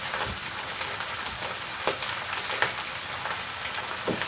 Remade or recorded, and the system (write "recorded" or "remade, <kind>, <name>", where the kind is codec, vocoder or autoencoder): recorded